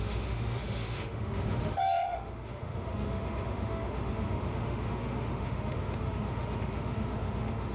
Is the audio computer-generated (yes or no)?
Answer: yes